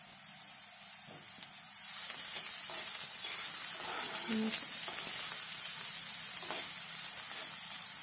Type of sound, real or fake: real